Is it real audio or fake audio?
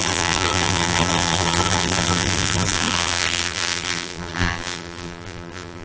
fake